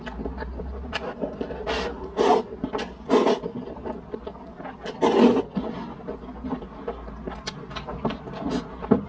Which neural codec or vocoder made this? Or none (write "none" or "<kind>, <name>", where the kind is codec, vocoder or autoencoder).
none